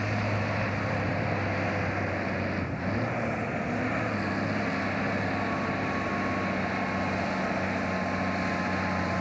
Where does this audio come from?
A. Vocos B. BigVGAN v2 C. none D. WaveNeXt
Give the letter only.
C